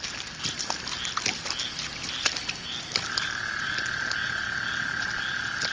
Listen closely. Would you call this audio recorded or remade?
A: recorded